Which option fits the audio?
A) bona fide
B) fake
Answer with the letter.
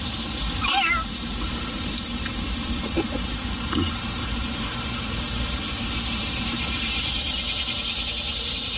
B